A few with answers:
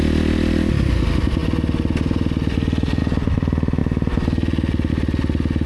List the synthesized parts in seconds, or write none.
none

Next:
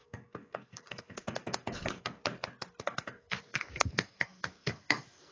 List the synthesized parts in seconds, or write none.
0.0-2.2 (codec, SNAC); 2.8-5.3

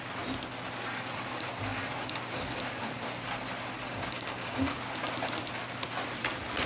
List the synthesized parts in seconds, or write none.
3.9-4.7 (codec, DAC)

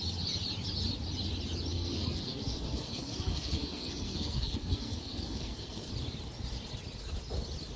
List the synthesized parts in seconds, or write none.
1.7-5.9 (codec, SNAC)

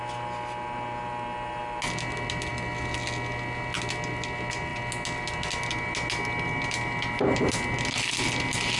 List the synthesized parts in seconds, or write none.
none

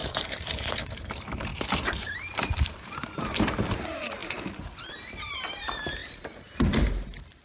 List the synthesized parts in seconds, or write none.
0.0-7.4 (vocoder, BigVGAN v2)

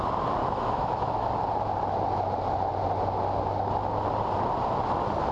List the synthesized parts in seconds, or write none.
0.4-1.3 (autoencoder, DAC-VAE)